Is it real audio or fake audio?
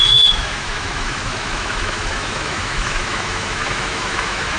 fake